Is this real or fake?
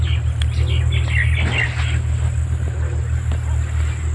real